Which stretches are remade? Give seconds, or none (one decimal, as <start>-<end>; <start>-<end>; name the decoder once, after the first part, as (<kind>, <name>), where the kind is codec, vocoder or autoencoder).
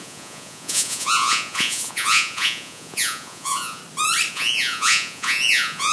0.0-3.8 (vocoder, Vocos); 4.3-5.9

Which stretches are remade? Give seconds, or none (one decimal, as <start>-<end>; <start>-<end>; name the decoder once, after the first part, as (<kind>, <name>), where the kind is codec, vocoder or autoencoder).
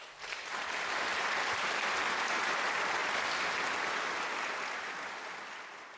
0.5-1.9 (vocoder, BigVGAN v2)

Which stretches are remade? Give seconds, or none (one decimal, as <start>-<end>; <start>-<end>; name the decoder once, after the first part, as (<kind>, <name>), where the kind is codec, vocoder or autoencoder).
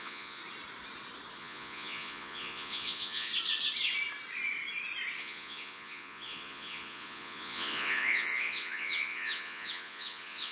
0.0-0.4 (vocoder, Vocos); 1.4-3.3; 5.2-10.5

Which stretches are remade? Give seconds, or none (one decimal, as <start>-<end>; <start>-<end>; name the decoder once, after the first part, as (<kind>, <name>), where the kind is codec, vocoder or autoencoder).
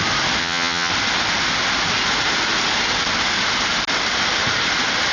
0.4-0.9 (vocoder, HiFi-GAN)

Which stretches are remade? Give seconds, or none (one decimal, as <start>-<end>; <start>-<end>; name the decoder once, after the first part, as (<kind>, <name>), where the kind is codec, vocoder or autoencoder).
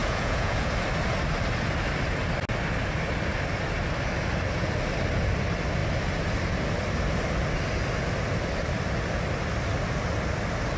0.0-0.7 (vocoder, Vocos)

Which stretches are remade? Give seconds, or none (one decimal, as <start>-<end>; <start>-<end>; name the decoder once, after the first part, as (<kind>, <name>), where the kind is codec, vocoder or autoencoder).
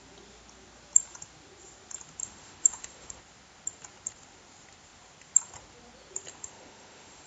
2.2-3.2 (autoencoder, DAC-VAE); 6.3-7.3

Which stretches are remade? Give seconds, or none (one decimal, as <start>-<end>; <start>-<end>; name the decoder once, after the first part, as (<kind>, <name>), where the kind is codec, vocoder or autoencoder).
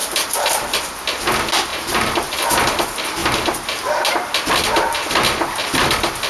0.0-0.6 (vocoder, BigVGAN v2); 1.7-2.3; 3.2-4.2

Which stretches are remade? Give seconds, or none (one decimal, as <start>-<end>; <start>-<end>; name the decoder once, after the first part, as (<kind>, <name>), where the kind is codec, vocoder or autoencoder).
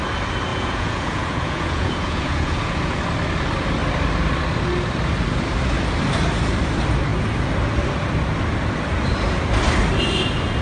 0.5-3.0 (vocoder, Vocos)